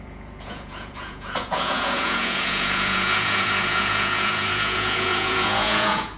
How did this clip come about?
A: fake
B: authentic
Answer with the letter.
A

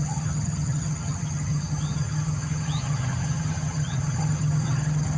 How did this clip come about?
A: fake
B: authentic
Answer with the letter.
A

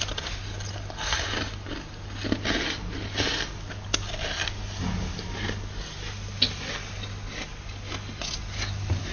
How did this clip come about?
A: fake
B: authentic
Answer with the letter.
B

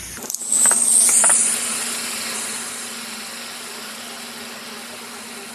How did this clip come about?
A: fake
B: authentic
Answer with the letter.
B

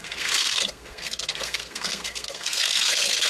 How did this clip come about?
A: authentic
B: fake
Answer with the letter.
B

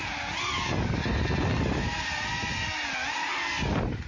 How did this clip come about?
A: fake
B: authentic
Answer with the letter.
B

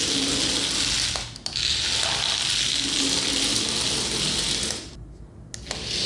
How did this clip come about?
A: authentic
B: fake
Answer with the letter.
A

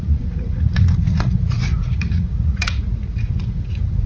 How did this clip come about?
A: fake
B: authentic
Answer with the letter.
A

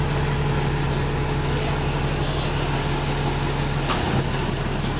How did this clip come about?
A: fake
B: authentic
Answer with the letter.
B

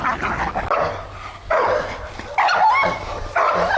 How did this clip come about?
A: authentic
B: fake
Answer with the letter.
A